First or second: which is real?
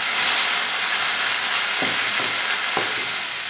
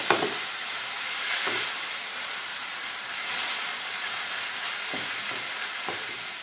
first